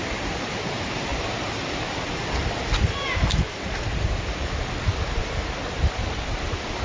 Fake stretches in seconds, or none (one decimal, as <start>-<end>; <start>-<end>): 0.0-1.1; 3.5-5.2; 6.0-6.8